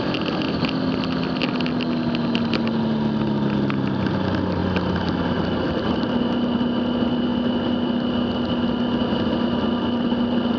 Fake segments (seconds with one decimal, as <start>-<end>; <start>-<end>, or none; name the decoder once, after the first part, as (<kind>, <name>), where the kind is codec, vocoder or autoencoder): none